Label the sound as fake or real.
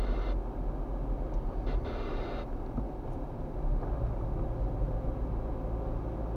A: real